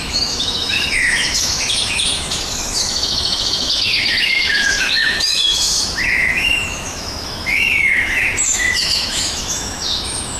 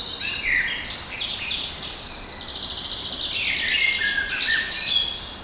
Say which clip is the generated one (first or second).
first